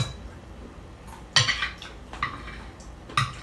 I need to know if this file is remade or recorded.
recorded